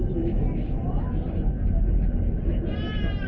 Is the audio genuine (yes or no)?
yes